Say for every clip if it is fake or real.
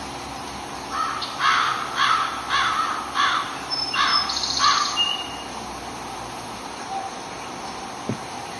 real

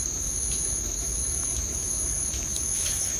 fake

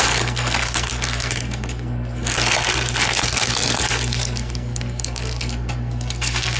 fake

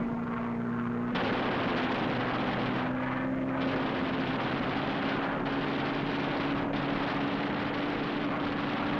real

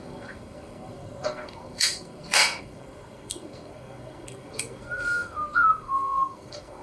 fake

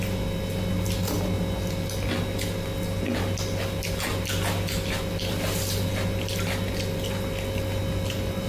real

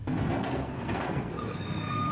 fake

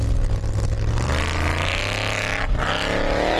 real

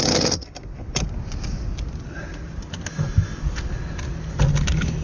real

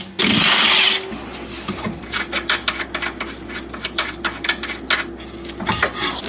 real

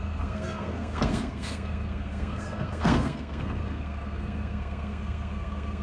fake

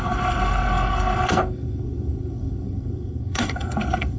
fake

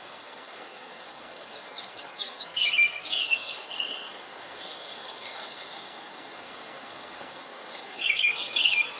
fake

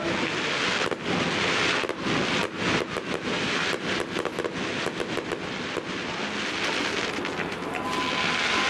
real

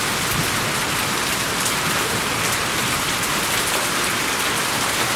real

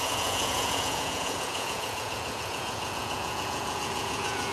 fake